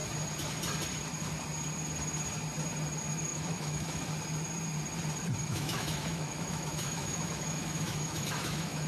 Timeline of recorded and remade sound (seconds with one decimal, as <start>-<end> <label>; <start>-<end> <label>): 0.0-3.3 recorded; 3.3-4.1 remade; 4.1-5.4 recorded; 5.4-8.9 remade